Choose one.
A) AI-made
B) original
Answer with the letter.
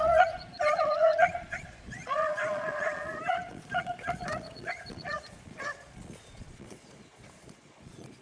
A